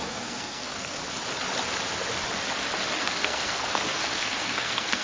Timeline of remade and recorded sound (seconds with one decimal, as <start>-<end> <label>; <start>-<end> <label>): 0.0-1.0 remade; 1.0-3.0 recorded; 3.0-5.0 remade